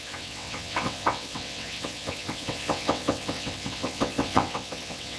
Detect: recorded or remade remade